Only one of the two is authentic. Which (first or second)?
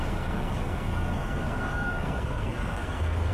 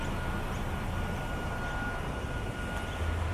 second